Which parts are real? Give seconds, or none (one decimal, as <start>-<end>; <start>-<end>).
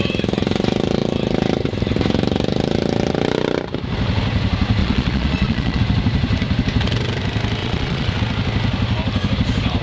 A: 0.0-4.8; 5.8-7.6; 8.2-9.8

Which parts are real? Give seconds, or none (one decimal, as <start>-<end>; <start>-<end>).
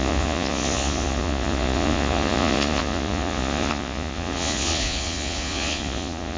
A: none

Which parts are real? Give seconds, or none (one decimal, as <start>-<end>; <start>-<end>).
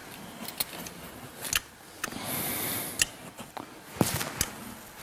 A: 0.0-5.0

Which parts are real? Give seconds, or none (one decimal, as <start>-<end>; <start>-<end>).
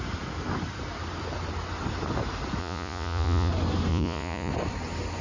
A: 0.0-2.6; 3.5-3.9; 4.5-5.2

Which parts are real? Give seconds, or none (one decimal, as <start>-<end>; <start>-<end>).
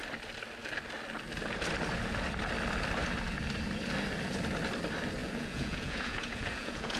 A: 0.0-5.2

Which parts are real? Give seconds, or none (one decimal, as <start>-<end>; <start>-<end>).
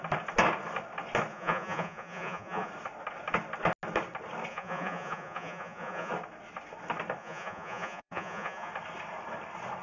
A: 0.0-1.3; 2.7-4.5; 6.1-7.2; 8.7-9.8